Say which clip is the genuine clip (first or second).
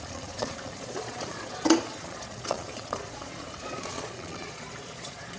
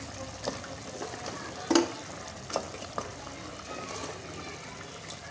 second